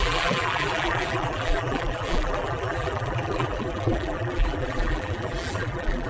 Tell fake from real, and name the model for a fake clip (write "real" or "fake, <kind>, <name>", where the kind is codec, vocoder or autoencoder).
fake, vocoder, BigVGAN v2